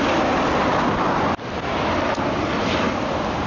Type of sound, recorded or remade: recorded